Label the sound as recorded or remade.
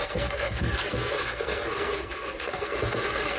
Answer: remade